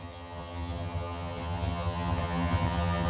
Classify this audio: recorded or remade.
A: remade